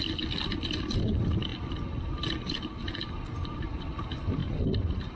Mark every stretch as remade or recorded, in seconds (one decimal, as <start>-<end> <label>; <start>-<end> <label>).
0.0-5.2 recorded

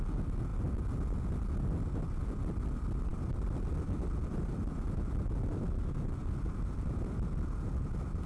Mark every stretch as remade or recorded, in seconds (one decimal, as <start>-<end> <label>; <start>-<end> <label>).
0.0-8.3 recorded

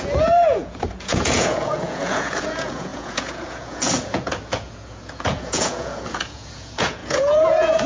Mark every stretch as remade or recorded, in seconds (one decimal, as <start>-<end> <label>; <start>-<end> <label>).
0.0-7.9 remade

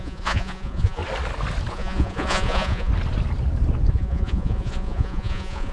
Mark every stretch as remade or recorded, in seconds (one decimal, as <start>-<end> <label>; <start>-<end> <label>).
0.0-1.0 remade; 1.0-1.7 recorded; 1.7-2.9 remade; 2.9-3.9 recorded; 3.9-5.7 remade

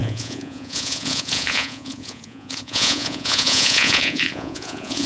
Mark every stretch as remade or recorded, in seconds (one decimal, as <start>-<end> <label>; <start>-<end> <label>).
0.0-5.1 remade

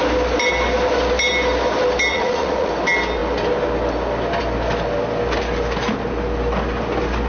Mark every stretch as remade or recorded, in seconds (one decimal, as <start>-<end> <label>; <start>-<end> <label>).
0.0-2.1 recorded; 2.1-2.7 remade; 2.7-7.3 recorded

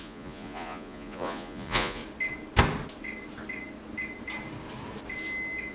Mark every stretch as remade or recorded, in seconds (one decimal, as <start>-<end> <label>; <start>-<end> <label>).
0.0-2.0 remade; 2.0-5.7 recorded

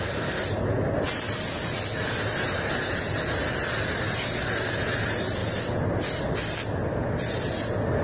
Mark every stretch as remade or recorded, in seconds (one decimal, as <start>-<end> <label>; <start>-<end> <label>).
0.0-8.0 recorded